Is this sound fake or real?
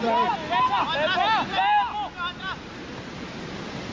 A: real